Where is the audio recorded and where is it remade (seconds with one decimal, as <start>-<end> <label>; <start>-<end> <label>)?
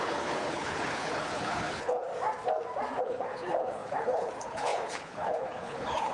0.0-2.1 remade; 2.1-3.0 recorded; 3.0-6.1 remade